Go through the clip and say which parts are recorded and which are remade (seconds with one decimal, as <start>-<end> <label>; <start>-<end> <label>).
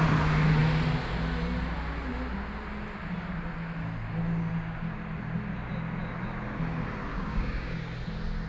0.0-7.1 recorded; 7.1-7.8 remade; 7.8-8.5 recorded